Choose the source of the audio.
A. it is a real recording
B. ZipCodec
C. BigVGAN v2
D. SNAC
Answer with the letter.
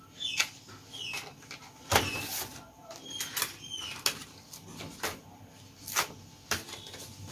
A